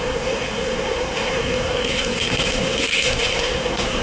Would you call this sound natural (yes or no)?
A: no